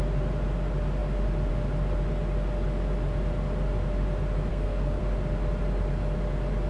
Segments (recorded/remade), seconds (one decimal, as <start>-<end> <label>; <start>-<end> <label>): 0.0-4.5 recorded; 4.5-5.0 remade; 5.0-6.7 recorded